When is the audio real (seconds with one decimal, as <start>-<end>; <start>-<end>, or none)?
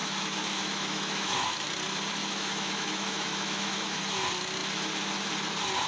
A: 1.7-2.2; 4.0-5.9